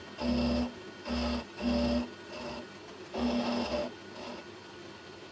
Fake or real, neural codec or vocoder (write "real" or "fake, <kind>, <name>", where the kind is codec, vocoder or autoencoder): real